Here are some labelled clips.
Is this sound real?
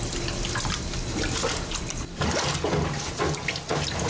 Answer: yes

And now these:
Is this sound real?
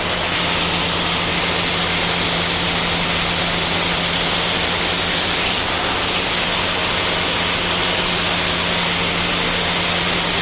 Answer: yes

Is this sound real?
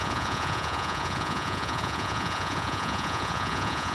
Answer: no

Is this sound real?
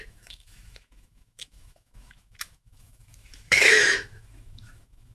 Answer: no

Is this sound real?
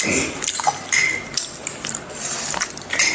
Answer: no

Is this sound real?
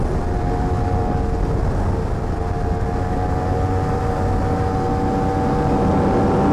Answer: yes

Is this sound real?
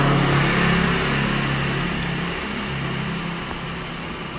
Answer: yes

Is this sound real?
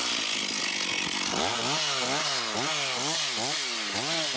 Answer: yes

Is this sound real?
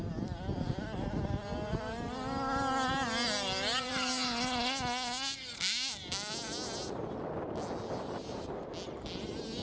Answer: yes